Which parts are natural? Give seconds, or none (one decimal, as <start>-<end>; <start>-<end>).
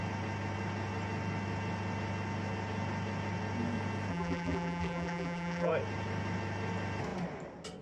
0.0-4.1; 5.7-7.8